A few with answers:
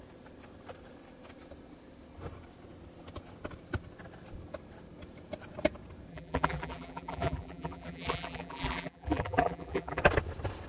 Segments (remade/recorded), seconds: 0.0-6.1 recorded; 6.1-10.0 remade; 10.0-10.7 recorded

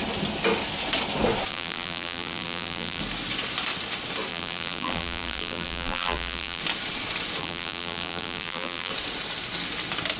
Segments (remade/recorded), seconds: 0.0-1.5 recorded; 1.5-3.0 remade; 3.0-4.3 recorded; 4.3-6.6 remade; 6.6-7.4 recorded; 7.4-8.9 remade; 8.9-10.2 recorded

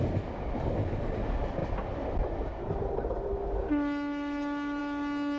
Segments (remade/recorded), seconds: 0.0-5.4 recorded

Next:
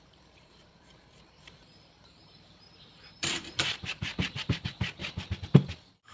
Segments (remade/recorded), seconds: 0.0-4.1 remade; 4.1-4.6 recorded; 4.6-5.0 remade; 5.0-6.1 recorded

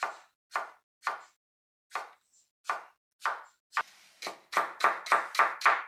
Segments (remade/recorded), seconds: 0.0-5.9 recorded

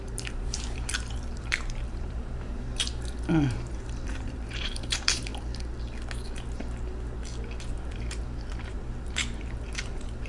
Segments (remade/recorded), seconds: 0.0-2.9 remade; 2.9-3.5 recorded; 3.5-5.3 remade; 5.3-7.7 recorded; 7.7-10.3 remade